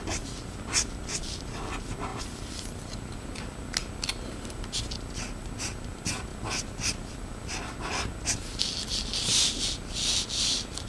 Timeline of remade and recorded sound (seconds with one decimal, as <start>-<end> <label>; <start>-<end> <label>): 0.0-2.1 recorded; 2.1-3.4 remade; 3.4-6.3 recorded; 6.3-7.5 remade; 7.5-10.9 recorded